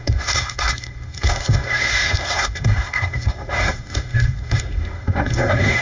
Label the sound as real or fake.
fake